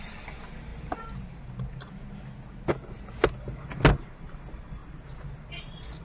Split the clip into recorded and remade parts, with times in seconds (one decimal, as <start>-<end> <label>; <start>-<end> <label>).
0.0-6.0 recorded